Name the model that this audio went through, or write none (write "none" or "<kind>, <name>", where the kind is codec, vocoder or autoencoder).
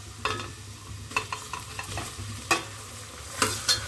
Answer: none